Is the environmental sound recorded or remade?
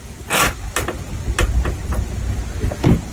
recorded